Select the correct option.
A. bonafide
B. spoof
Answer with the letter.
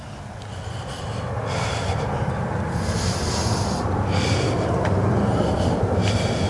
A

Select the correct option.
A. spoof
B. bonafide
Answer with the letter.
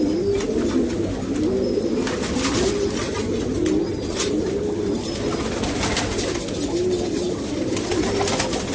B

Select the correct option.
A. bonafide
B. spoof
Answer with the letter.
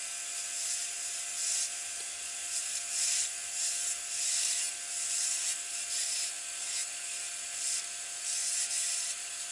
B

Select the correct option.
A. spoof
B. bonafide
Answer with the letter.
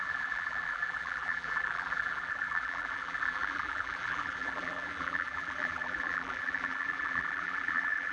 A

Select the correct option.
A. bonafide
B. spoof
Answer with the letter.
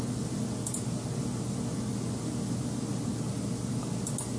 A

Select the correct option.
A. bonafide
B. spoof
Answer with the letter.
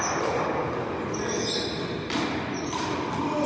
A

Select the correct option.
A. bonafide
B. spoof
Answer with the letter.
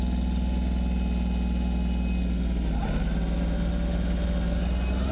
A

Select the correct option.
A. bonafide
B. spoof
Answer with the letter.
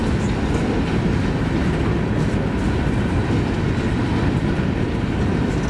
A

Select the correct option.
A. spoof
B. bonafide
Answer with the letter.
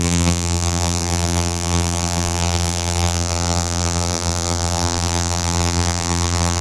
A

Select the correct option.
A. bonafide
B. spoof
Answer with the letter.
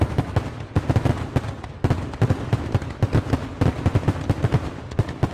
A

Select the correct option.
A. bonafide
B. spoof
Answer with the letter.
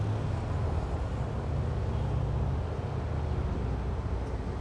A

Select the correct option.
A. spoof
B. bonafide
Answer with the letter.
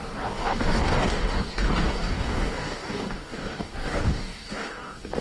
A